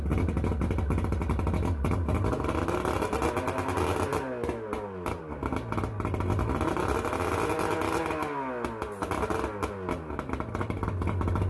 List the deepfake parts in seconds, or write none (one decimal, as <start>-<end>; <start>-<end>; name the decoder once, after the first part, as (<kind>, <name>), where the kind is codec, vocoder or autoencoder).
none